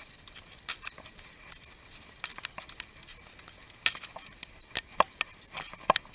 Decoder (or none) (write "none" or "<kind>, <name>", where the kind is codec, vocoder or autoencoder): none